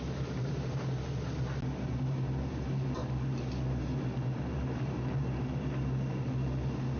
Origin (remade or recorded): recorded